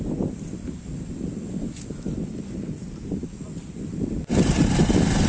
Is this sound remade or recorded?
recorded